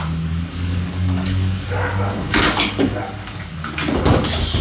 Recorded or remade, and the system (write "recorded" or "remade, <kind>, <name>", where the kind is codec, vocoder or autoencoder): remade, codec, DAC